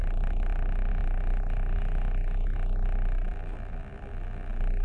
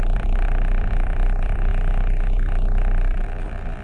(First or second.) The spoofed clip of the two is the second